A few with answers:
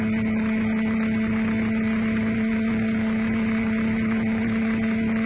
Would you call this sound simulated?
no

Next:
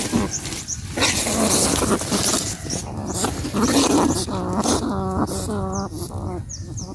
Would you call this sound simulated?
no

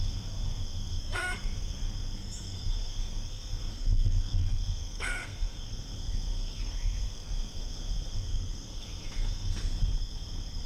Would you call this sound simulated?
yes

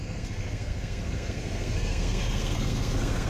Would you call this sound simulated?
yes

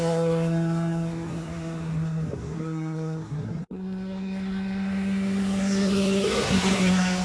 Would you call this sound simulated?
yes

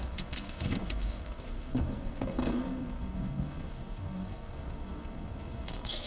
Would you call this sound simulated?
yes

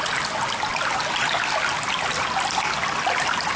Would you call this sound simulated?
no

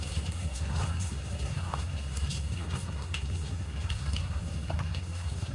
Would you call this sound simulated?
yes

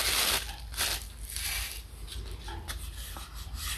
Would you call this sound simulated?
no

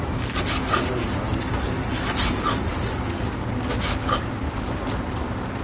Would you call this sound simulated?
no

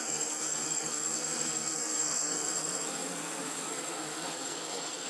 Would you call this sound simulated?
yes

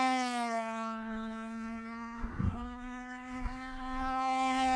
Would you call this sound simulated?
yes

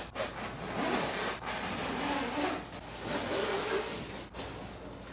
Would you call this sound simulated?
no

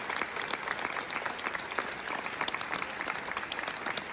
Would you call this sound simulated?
no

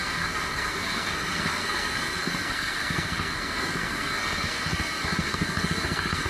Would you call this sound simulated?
yes